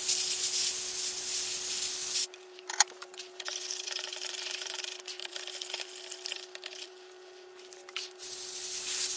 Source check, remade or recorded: remade